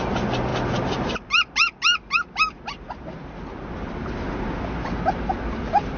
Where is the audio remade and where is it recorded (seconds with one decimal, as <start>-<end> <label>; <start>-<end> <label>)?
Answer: 0.0-6.0 recorded